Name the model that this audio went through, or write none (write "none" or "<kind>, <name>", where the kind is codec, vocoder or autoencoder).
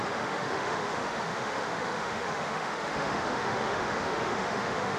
autoencoder, DAC-VAE